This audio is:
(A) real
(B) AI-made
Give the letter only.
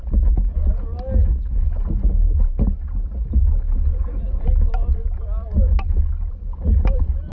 A